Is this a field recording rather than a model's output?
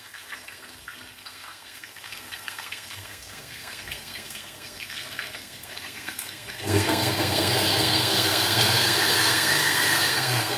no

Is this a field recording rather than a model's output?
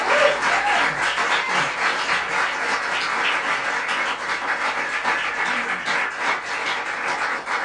yes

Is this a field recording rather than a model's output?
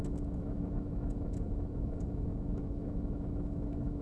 no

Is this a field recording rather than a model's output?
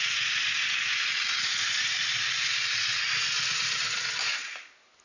yes